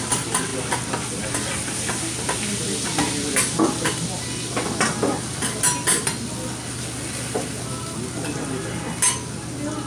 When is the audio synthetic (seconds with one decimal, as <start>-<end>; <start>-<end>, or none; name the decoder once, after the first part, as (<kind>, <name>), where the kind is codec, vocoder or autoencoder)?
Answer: none